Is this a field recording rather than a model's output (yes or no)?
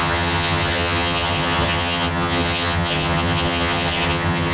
no